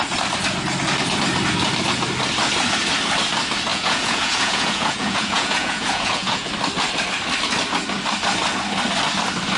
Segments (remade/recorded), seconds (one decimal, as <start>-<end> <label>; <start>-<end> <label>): 0.0-3.7 recorded; 3.7-6.5 remade; 6.5-9.6 recorded